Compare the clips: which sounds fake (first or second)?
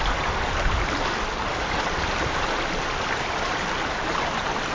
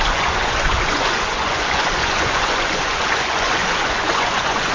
second